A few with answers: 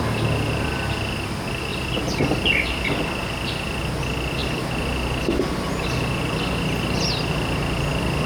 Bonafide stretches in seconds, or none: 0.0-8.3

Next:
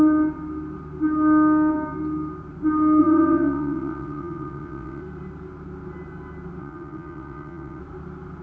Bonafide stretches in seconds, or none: 0.0-3.0; 5.0-6.6; 7.8-8.4

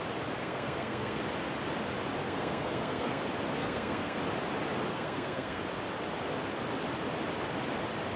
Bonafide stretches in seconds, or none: 0.0-0.4; 1.2-2.2; 3.2-3.6; 4.2-4.9; 5.6-8.2

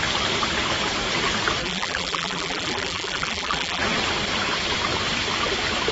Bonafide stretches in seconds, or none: 0.0-1.6; 3.8-5.9

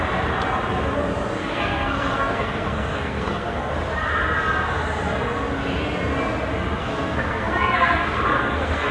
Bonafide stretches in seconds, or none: 0.0-1.4; 3.7-6.8

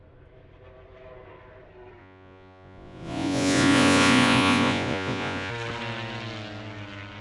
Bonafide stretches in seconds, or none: 0.0-2.0; 5.5-7.2

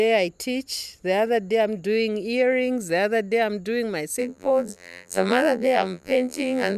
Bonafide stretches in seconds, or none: 0.0-4.2